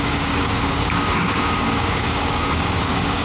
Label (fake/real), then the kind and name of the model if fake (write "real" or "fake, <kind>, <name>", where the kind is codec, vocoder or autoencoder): fake, codec, DAC